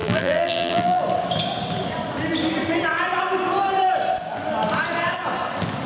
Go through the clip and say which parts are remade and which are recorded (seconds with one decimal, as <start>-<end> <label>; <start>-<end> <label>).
0.0-1.0 remade; 1.0-5.9 recorded